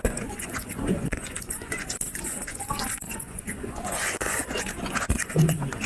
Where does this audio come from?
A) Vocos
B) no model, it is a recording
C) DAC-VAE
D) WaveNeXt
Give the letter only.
A